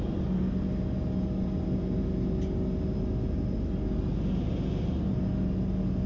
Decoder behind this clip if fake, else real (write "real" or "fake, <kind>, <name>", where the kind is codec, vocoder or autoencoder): real